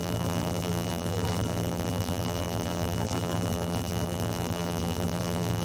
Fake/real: fake